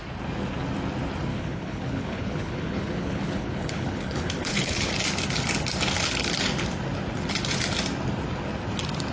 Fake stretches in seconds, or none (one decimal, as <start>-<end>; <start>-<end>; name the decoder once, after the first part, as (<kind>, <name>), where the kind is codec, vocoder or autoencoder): 1.3-4.9 (codec, HILCodec)